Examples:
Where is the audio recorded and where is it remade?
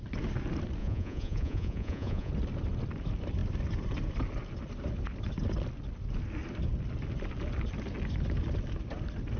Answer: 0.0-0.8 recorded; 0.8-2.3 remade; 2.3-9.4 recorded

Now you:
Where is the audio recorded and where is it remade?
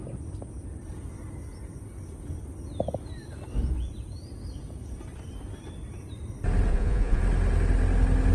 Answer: 0.0-6.7 recorded; 6.7-7.2 remade; 7.2-8.3 recorded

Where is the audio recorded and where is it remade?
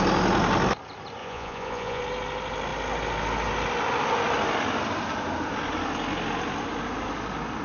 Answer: 0.0-1.2 recorded; 1.2-2.0 remade; 2.0-7.6 recorded